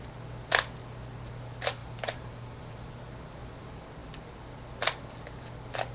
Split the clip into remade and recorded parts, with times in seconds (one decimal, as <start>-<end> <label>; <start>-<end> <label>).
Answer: 0.0-1.8 recorded; 1.8-2.9 remade; 2.9-5.9 recorded